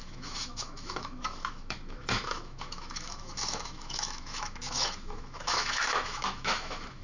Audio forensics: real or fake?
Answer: fake